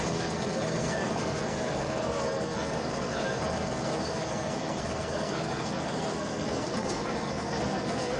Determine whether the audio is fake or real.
fake